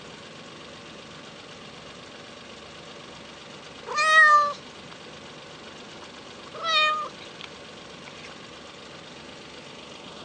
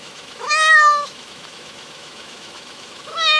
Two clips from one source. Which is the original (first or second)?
first